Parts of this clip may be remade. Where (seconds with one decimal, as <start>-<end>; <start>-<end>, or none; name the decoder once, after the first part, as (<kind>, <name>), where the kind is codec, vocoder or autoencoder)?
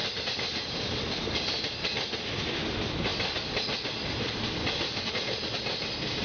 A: 0.0-1.0 (vocoder, BigVGAN v2)